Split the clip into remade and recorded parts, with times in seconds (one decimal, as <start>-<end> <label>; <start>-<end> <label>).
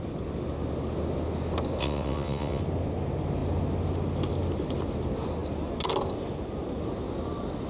0.0-1.8 recorded; 1.8-2.6 remade; 2.6-7.7 recorded